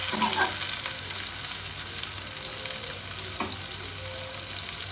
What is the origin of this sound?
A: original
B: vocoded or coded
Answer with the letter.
A